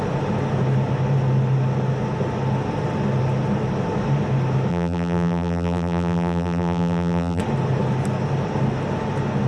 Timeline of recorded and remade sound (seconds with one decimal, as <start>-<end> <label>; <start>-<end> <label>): 0.0-4.7 recorded; 4.7-7.4 remade; 7.4-9.5 recorded